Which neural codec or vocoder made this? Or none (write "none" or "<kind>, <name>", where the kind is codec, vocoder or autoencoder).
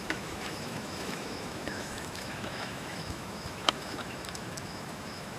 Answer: autoencoder, DAC-VAE